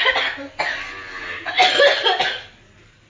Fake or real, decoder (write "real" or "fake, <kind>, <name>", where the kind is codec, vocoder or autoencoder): real